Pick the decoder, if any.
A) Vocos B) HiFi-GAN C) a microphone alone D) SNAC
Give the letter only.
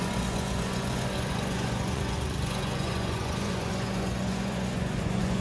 A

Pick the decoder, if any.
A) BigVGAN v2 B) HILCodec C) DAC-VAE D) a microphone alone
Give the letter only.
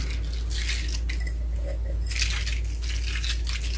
D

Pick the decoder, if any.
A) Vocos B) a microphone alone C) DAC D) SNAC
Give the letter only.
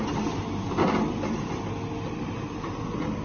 B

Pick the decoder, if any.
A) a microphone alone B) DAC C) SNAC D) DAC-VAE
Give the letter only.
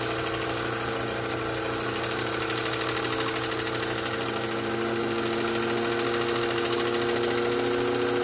A